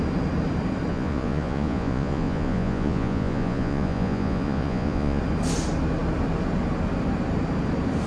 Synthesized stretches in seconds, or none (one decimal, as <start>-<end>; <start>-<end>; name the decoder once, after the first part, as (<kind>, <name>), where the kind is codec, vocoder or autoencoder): 0.9-5.2 (vocoder, Vocos)